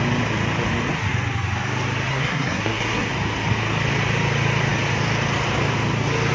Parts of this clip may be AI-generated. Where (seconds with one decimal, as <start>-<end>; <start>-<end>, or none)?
2.1-3.1